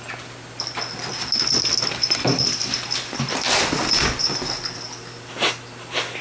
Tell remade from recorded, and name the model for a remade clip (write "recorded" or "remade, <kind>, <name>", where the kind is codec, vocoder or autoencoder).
recorded